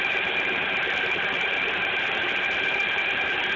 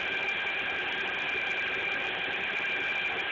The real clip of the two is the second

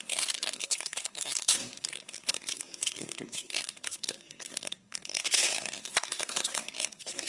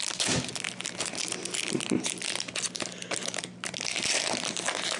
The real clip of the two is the second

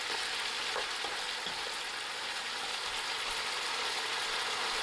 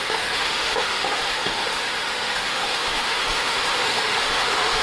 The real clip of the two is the first